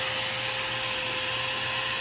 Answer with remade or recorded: recorded